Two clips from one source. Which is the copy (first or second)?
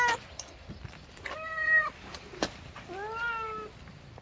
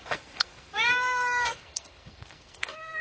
second